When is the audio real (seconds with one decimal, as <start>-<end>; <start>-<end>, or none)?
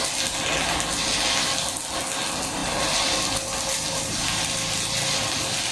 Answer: 0.0-2.6